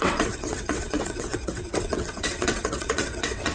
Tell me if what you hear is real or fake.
fake